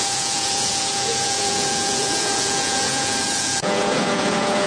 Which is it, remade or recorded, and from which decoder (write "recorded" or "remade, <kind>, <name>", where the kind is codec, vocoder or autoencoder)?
remade, vocoder, Vocos